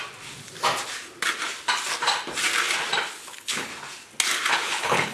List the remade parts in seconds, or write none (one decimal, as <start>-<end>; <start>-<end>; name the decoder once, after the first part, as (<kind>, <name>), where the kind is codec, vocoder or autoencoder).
3.1-3.7 (codec, HILCodec); 4.5-5.1